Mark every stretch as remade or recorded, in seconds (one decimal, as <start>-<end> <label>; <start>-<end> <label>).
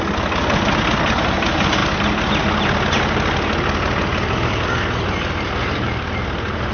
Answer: 0.0-6.7 recorded